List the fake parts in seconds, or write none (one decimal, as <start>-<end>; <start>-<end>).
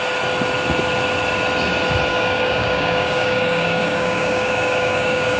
2.1-5.4